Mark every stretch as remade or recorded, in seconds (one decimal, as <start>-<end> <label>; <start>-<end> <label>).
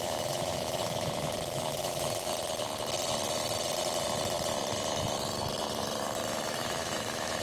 0.0-2.3 remade; 2.3-6.3 recorded; 6.3-7.4 remade